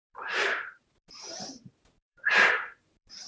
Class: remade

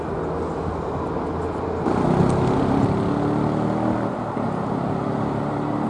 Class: recorded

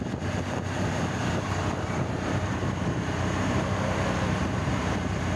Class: remade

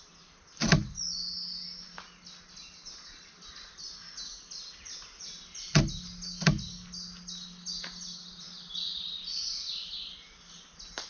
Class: recorded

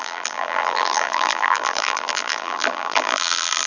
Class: remade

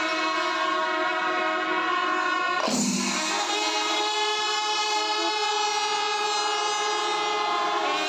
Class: recorded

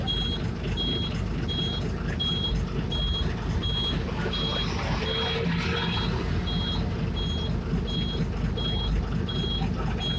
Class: recorded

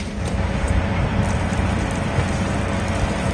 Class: remade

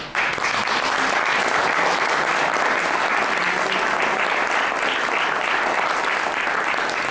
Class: recorded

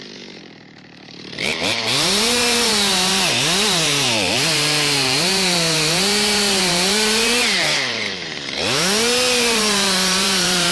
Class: remade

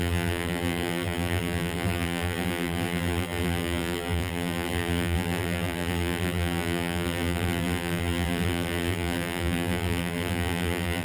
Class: remade